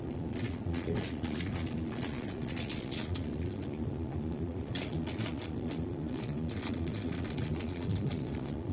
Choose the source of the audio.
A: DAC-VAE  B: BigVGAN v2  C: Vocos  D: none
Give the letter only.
C